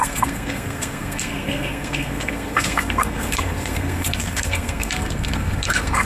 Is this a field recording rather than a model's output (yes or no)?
no